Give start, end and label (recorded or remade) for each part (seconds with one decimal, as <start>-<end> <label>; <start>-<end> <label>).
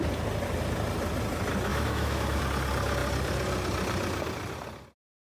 0.0-1.7 recorded; 1.7-2.4 remade; 2.4-5.3 recorded